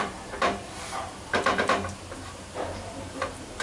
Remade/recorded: remade